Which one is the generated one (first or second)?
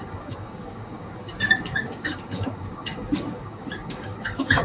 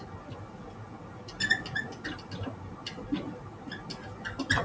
first